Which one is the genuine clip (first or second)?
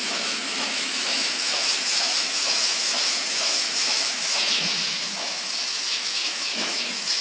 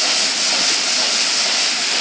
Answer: second